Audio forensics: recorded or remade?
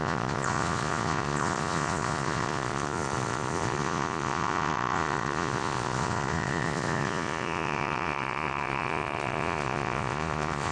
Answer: remade